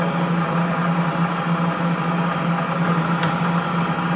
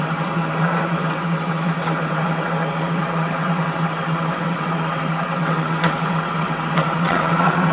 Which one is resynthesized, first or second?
second